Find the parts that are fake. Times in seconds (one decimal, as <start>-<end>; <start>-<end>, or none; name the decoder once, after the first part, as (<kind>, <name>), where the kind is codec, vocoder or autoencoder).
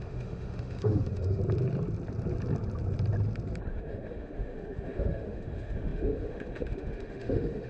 0.0-1.4 (autoencoder, DAC-VAE); 3.7-7.7